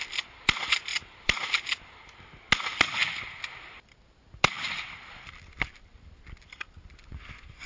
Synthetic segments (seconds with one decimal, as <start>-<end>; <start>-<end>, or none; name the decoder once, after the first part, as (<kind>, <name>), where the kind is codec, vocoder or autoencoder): 0.9-1.6 (vocoder, BigVGAN v2)